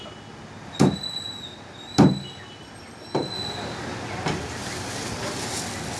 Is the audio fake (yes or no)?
no